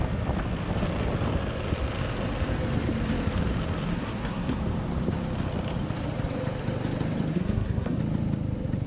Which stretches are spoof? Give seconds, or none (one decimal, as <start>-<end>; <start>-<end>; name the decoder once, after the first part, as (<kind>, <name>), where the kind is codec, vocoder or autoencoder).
3.9-4.6 (codec, SNAC); 7.3-8.0